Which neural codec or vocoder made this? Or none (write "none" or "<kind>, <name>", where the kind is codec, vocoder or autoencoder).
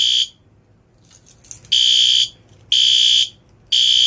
none